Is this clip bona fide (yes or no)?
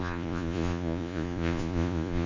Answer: no